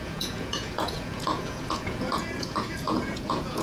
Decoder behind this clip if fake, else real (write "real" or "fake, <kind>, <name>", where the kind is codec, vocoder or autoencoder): fake, vocoder, Vocos